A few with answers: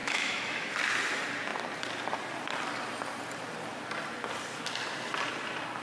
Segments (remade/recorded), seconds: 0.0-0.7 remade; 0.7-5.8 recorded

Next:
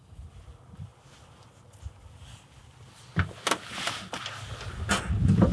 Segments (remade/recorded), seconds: 0.0-5.5 recorded

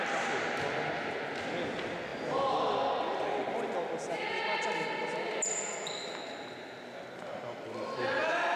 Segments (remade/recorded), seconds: 0.0-8.6 recorded